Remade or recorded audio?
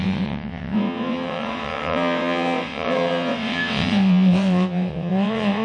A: remade